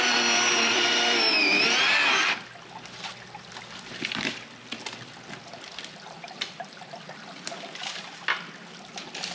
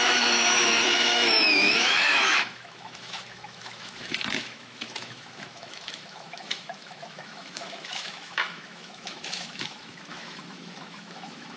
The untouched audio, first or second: first